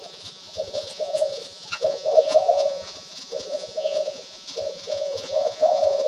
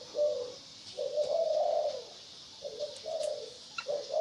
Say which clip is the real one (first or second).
second